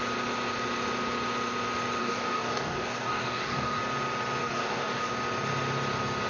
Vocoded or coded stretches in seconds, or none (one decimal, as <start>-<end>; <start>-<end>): 2.0-3.8; 4.4-5.1